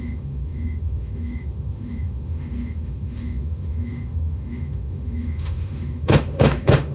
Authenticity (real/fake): fake